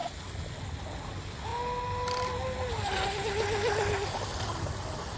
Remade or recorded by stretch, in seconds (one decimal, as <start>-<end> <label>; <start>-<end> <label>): 0.0-5.2 recorded